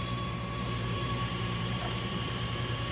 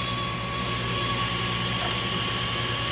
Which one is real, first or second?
second